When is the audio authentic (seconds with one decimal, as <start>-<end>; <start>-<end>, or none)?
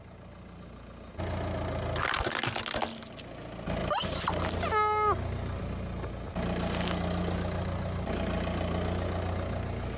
0.0-10.0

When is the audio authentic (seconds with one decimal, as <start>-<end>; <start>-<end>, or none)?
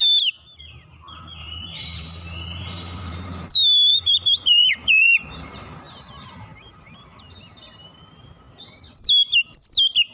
0.0-1.4; 3.5-3.9; 8.0-10.1